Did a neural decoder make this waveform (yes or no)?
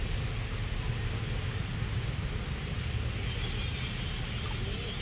no